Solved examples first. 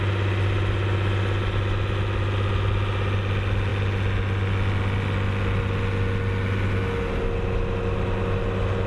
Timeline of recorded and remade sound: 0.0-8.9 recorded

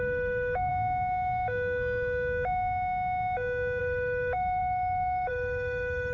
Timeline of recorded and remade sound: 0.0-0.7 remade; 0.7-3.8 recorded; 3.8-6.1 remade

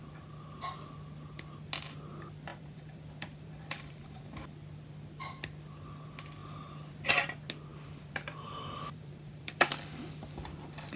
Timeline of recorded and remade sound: 0.0-2.5 recorded; 2.5-4.2 remade; 4.2-7.7 recorded; 7.7-11.0 remade

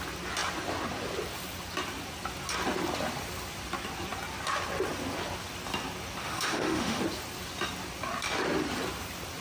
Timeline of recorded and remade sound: 0.0-6.2 recorded; 6.2-7.0 remade; 7.0-9.4 recorded

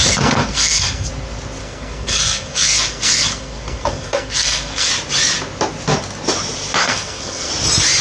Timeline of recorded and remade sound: 0.0-1.1 remade; 1.1-1.6 recorded; 1.6-4.9 remade; 4.9-6.8 recorded; 6.8-7.5 remade; 7.5-8.0 recorded

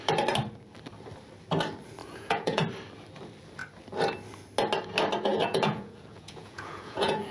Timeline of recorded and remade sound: 0.0-2.0 recorded; 2.0-2.6 remade; 2.6-5.3 recorded; 5.3-7.3 remade

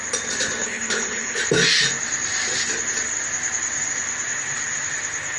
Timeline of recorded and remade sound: 0.0-0.6 recorded; 0.6-1.4 remade; 1.4-5.4 recorded

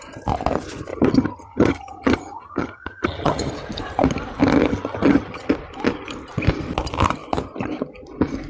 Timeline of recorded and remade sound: 0.0-0.9 recorded; 0.9-3.5 remade; 3.5-4.7 recorded; 4.7-5.5 remade; 5.5-8.5 recorded